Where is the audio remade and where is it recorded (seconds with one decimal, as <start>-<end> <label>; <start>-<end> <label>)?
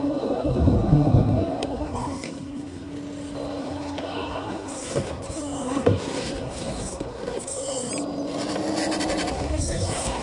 0.0-2.9 remade; 2.9-3.6 recorded; 3.6-7.9 remade; 7.9-9.3 recorded; 9.3-10.2 remade